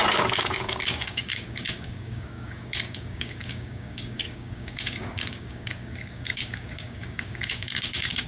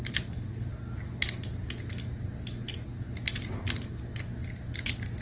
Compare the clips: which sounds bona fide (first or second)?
second